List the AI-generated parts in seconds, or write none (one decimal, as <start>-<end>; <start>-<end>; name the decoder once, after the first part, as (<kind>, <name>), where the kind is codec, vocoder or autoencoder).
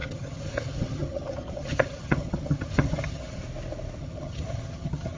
0.0-3.4 (vocoder, HiFi-GAN); 4.0-5.2